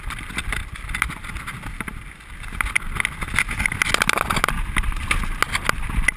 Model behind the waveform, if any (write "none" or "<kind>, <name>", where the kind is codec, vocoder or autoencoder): none